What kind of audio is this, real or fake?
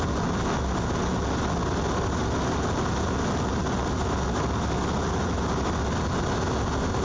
real